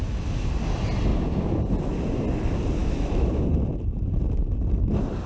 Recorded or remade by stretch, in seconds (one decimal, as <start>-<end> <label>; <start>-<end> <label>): 0.0-2.8 recorded; 2.8-3.4 remade; 3.4-5.3 recorded